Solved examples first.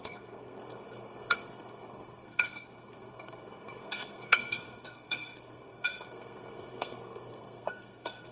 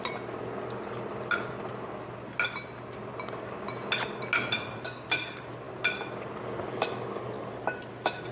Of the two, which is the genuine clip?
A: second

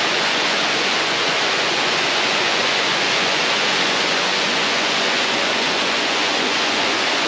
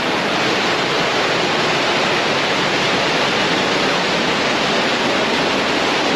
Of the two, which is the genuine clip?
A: second